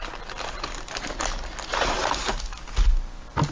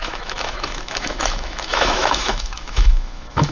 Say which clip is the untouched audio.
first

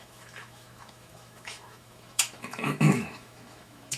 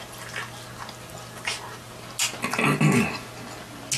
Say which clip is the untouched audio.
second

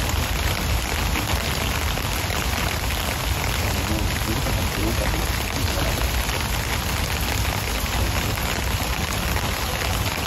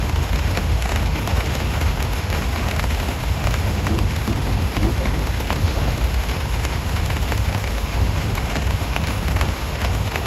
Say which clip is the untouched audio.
first